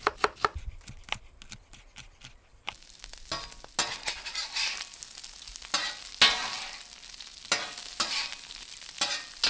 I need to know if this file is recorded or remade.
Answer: recorded